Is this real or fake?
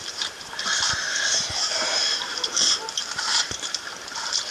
fake